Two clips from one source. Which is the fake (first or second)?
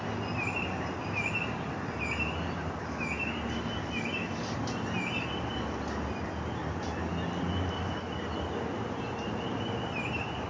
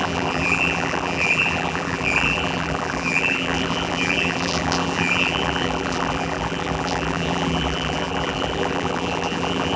second